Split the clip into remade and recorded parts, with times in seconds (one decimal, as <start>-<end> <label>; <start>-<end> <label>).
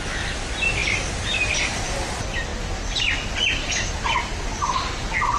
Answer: 0.0-5.4 recorded